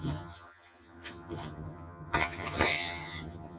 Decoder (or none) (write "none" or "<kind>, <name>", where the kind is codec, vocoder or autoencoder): vocoder, HiFi-GAN